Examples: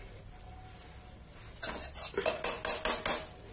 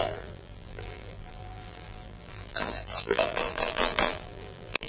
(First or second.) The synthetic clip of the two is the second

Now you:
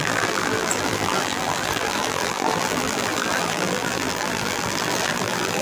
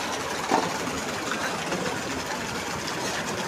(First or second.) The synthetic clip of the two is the first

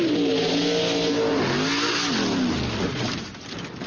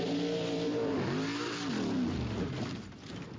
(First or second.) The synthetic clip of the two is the second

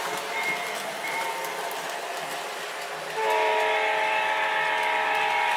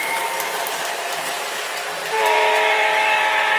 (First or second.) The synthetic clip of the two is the second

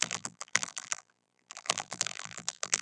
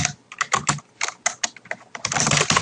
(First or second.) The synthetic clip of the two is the first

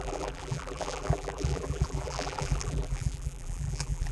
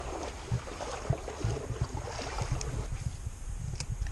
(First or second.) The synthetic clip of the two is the first